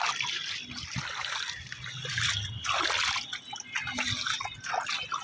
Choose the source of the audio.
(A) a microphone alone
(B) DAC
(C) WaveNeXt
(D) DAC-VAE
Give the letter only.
A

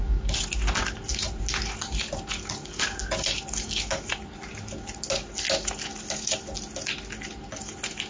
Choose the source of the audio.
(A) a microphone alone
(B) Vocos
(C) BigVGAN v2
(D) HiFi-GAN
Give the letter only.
A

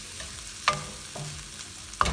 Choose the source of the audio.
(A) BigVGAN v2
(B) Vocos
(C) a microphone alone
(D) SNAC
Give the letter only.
C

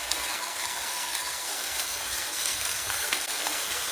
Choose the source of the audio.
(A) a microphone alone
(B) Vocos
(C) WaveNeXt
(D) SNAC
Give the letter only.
D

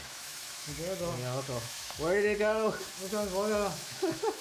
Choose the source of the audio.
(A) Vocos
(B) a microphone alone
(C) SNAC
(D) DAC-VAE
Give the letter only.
D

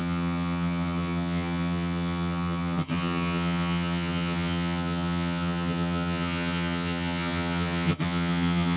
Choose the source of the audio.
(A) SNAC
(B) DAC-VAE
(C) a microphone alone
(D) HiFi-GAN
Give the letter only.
D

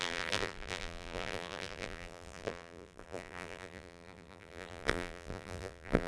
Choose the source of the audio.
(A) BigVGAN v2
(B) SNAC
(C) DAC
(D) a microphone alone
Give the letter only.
A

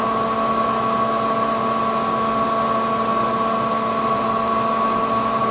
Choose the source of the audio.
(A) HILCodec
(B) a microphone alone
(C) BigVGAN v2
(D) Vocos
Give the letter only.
B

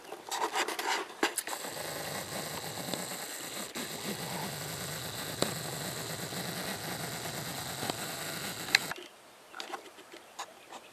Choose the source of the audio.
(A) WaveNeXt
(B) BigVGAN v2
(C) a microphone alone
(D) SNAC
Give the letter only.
B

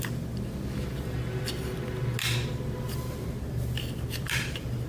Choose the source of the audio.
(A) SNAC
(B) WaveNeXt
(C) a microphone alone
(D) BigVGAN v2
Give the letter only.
C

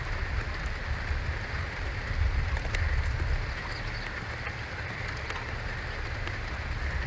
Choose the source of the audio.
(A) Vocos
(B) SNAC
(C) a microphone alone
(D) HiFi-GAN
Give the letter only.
C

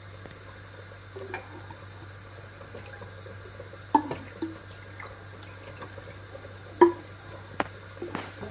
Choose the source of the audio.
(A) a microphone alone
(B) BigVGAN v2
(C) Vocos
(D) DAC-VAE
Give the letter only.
B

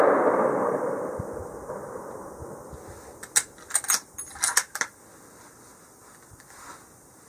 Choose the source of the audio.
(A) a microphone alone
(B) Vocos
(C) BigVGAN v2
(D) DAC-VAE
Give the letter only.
A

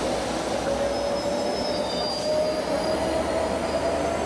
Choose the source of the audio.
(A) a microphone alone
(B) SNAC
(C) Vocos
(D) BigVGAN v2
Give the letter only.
A